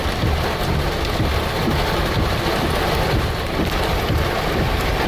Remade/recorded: recorded